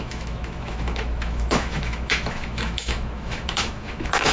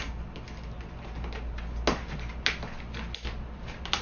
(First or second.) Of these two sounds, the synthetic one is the first